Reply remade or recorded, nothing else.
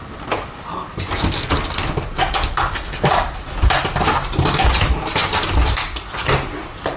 recorded